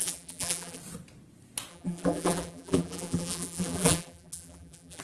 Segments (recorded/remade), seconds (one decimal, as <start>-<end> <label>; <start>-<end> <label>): 0.0-0.8 remade; 0.8-1.7 recorded; 1.7-5.0 remade